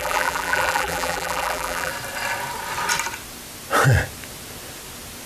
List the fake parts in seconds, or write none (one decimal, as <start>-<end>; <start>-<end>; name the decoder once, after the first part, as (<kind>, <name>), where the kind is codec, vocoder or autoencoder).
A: 0.0-1.9 (vocoder, BigVGAN v2)